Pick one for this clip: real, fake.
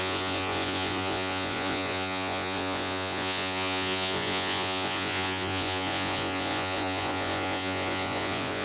fake